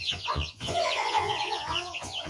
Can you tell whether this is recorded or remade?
remade